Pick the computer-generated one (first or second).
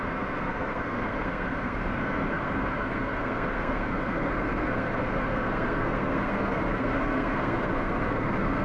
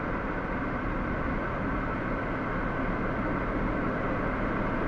first